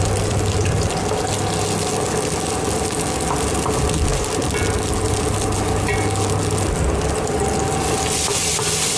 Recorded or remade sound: recorded